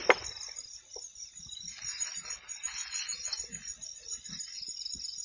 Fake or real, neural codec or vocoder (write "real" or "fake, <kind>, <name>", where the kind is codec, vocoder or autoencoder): real